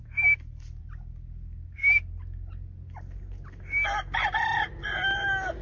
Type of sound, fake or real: real